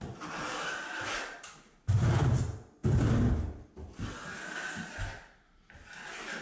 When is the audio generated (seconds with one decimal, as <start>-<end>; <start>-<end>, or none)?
none